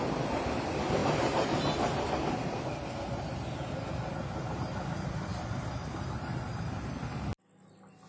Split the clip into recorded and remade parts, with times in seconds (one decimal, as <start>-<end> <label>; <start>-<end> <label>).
0.0-1.0 recorded; 1.0-2.4 remade; 2.4-8.1 recorded